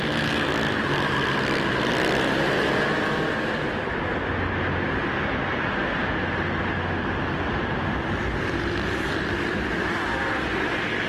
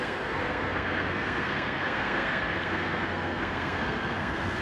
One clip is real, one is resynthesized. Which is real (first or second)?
first